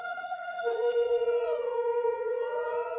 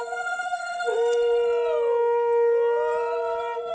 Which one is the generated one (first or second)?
first